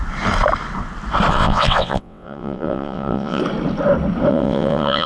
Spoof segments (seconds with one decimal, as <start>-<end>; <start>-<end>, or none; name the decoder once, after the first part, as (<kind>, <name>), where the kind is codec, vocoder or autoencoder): 1.3-3.4 (vocoder, WaveNeXt); 4.3-5.1